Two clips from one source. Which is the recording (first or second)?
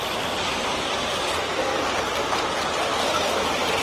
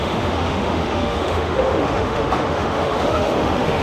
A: first